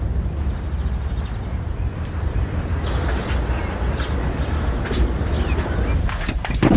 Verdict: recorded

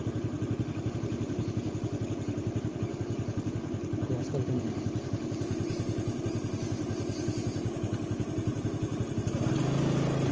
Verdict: recorded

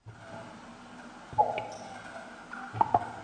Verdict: recorded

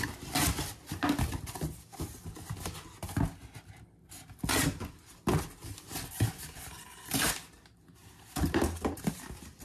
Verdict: recorded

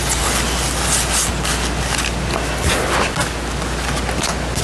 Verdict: recorded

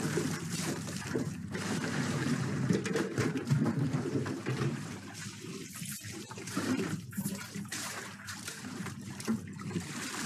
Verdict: remade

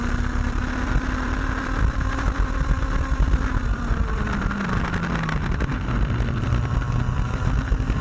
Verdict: remade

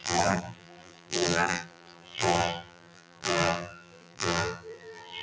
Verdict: remade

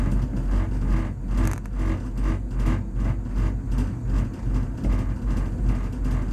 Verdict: recorded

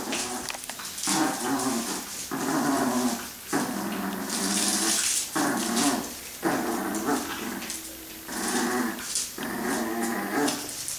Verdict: recorded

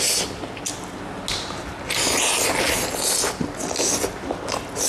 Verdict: recorded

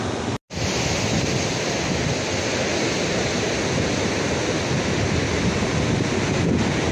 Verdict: recorded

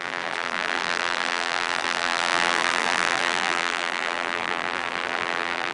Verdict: remade